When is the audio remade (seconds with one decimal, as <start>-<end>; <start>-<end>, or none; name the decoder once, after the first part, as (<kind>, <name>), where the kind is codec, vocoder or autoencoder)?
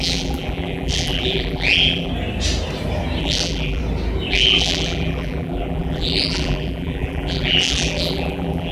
0.0-2.1 (vocoder, BigVGAN v2); 3.2-3.8; 4.3-8.7